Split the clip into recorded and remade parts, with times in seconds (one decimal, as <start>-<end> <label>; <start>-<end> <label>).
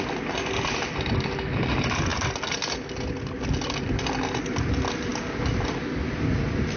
0.0-6.8 recorded